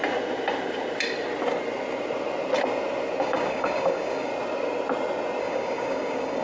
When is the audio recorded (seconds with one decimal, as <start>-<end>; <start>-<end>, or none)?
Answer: 0.0-3.2; 4.3-5.4